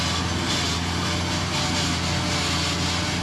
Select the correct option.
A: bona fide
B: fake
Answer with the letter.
A